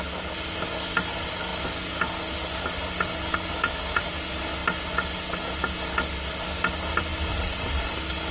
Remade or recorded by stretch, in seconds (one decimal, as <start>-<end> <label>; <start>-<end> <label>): 0.0-7.1 recorded; 7.1-7.9 remade; 7.9-8.3 recorded